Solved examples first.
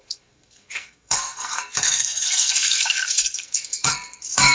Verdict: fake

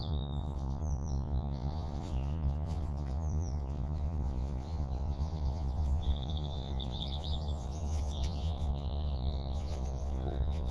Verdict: fake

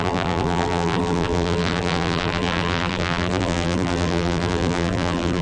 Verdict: fake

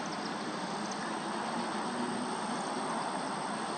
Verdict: real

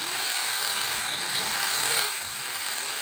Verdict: fake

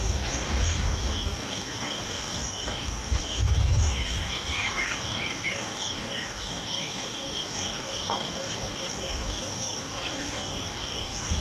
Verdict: fake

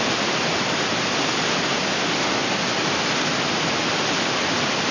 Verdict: real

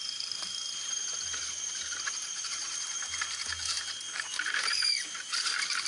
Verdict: fake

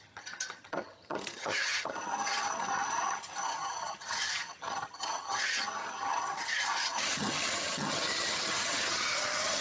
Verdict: fake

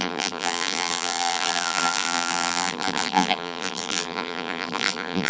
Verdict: fake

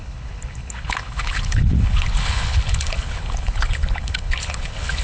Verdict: fake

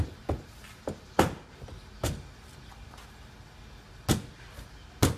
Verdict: real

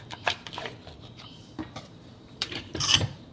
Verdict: fake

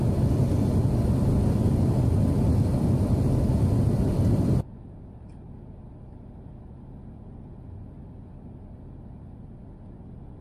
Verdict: real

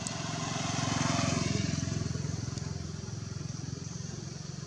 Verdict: real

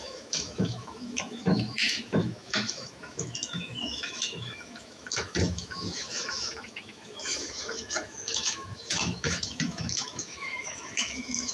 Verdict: fake